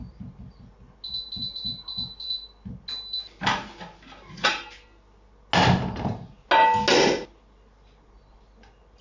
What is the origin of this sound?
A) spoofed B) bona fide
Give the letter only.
B